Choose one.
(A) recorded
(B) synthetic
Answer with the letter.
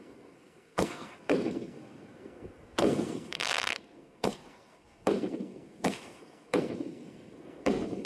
B